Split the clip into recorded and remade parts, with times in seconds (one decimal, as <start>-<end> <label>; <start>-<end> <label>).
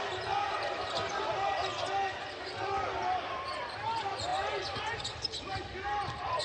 0.0-6.4 recorded